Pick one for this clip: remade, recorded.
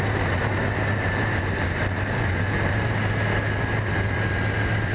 recorded